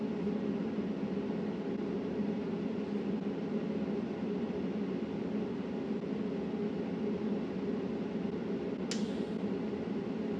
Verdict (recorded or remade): recorded